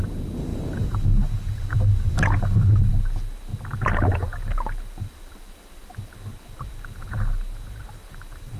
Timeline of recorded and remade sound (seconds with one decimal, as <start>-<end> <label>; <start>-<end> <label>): 0.0-8.6 recorded